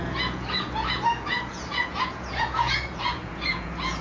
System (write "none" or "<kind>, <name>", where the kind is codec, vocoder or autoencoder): vocoder, Vocos